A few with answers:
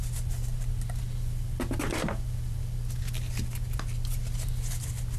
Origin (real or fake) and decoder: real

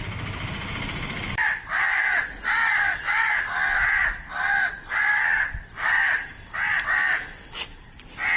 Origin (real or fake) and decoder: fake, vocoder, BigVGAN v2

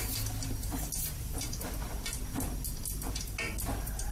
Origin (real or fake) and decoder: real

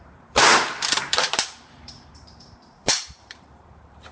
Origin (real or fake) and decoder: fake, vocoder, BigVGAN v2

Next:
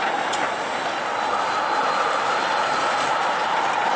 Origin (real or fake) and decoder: real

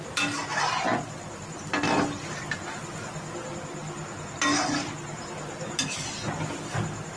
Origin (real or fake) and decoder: real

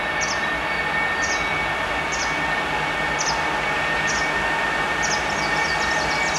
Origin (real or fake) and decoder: real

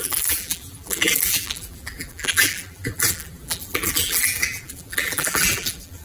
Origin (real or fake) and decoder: fake, vocoder, BigVGAN v2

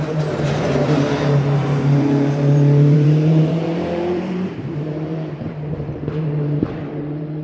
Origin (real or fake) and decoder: fake, vocoder, BigVGAN v2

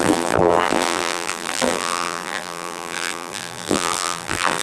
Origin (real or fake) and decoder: fake, vocoder, BigVGAN v2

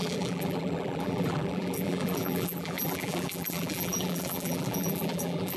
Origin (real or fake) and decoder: fake, vocoder, BigVGAN v2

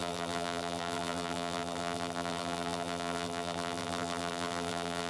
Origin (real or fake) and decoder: fake, vocoder, BigVGAN v2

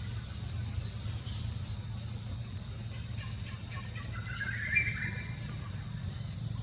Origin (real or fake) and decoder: real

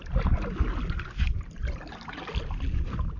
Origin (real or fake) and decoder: real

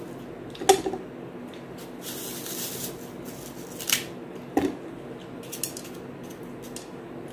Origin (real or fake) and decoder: real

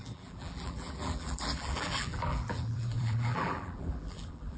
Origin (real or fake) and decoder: fake, vocoder, BigVGAN v2